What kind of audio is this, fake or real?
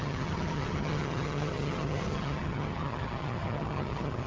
fake